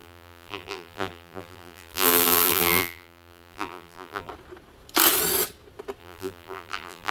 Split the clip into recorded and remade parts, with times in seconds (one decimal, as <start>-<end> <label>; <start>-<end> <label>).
0.0-4.3 remade; 4.3-6.0 recorded; 6.0-7.1 remade